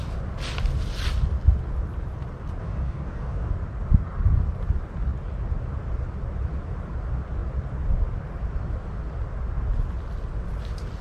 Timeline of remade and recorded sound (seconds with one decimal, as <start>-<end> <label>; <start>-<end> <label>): 0.0-2.6 recorded; 2.6-3.5 remade; 3.5-11.0 recorded